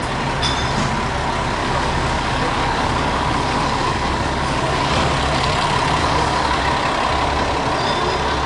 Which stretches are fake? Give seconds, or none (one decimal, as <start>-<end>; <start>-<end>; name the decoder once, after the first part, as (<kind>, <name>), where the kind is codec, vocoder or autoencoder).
1.6-5.1 (codec, DAC); 6.0-6.6